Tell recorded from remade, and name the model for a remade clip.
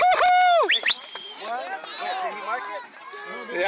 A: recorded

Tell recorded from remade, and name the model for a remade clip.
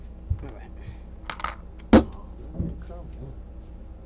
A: recorded